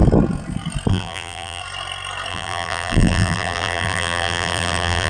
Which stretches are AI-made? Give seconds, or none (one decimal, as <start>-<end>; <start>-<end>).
0.9-1.6; 2.3-5.1